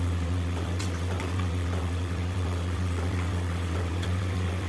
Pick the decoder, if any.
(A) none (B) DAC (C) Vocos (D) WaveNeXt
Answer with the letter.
D